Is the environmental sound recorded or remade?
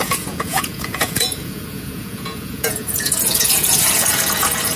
remade